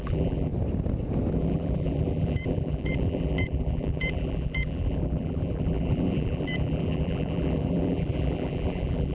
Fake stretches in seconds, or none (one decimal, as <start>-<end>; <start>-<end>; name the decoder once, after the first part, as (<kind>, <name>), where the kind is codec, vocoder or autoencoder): 0.0-0.5 (vocoder, BigVGAN v2); 1.3-9.1

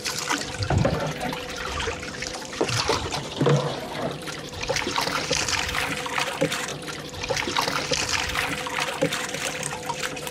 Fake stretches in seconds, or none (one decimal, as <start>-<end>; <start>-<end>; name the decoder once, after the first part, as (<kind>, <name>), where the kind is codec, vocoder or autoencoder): 0.0-6.7 (vocoder, BigVGAN v2); 9.6-10.3

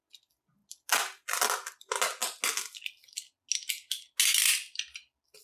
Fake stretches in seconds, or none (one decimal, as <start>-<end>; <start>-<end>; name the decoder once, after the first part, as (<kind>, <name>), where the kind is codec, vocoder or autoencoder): none

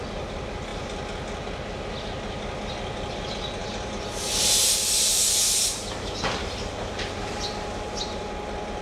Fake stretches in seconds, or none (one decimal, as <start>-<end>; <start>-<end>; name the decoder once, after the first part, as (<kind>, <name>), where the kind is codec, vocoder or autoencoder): 3.6-8.3 (vocoder, BigVGAN v2)

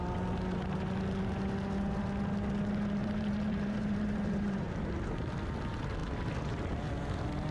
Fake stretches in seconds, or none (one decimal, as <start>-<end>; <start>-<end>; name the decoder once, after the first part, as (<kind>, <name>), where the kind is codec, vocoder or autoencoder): 3.0-5.3 (vocoder, BigVGAN v2)

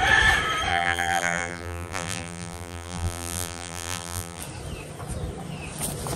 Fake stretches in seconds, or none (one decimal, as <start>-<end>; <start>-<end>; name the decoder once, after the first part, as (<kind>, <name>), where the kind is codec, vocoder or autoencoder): 0.7-4.4 (vocoder, BigVGAN v2)

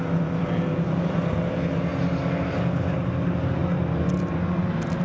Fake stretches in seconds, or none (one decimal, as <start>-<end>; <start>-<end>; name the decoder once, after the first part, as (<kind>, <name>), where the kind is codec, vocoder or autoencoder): none